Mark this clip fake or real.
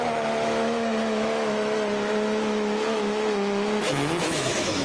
fake